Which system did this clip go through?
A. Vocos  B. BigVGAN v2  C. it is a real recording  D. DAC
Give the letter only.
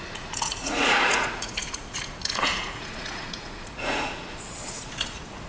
A